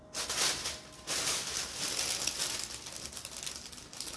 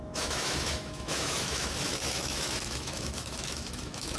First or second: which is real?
first